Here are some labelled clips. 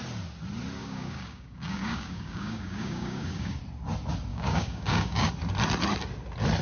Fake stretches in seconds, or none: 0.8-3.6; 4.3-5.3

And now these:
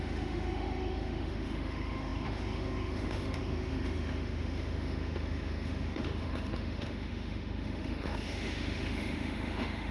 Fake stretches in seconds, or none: 0.0-9.9

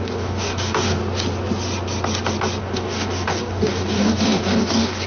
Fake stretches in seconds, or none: 0.0-1.0; 2.6-5.1

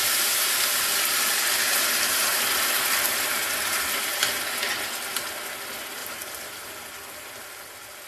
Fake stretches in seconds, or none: 6.0-6.8

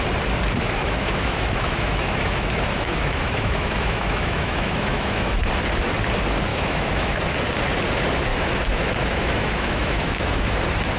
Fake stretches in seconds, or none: 0.8-5.4; 6.5-7.2; 8.3-10.5

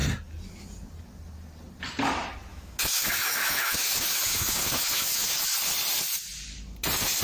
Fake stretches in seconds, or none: 2.5-5.5